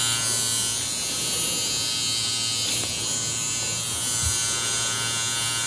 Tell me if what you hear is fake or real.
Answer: real